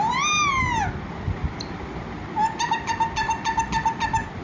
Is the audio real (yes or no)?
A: yes